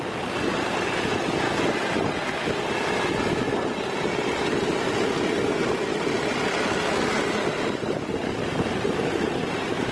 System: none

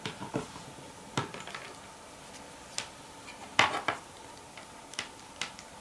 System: none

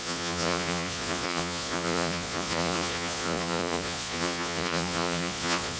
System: vocoder, Vocos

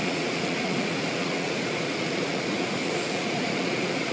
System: vocoder, Vocos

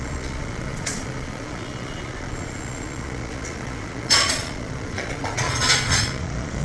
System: vocoder, Vocos